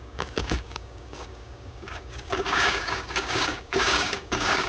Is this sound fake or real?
fake